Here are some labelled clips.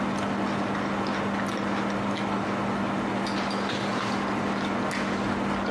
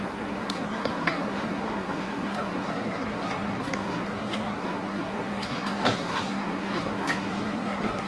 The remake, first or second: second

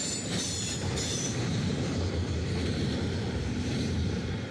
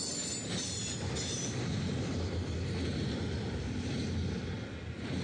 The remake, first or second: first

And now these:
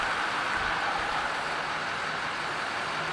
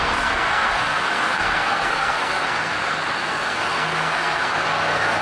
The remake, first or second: second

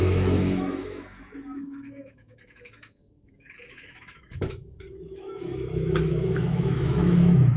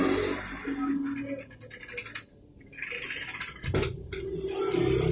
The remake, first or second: first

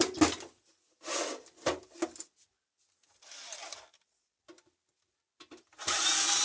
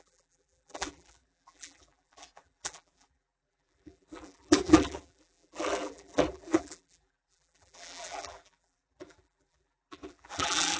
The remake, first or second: second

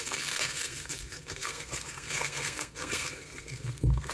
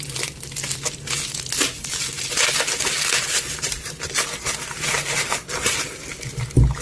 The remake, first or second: first